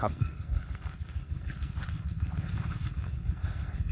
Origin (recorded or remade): remade